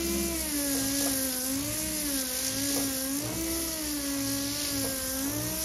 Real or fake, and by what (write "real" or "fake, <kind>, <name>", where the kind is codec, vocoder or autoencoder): real